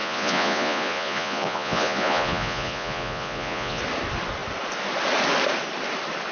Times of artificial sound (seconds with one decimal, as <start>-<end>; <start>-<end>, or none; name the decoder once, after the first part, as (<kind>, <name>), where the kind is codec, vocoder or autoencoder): 0.0-3.8 (vocoder, Vocos)